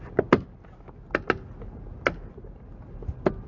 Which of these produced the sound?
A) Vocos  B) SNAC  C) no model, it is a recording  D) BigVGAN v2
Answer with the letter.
C